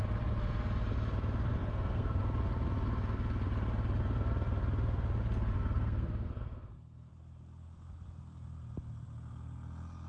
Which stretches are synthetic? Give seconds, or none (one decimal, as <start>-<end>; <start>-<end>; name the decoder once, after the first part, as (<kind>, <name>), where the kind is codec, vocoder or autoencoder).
1.6-2.2 (codec, SNAC); 5.5-7.1